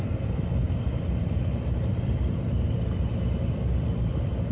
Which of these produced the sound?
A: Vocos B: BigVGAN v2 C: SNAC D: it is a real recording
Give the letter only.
B